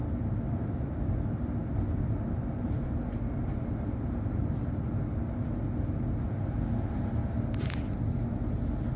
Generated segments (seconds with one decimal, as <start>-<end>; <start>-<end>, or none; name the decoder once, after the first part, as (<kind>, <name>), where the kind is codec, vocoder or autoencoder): none